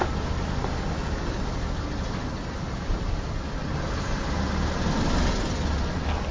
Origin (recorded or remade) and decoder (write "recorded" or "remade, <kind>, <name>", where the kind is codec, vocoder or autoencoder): recorded